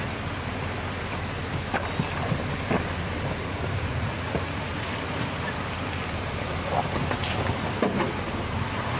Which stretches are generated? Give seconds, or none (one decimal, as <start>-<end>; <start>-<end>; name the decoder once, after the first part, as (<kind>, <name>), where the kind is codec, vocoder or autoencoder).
3.9-4.7 (vocoder, Vocos)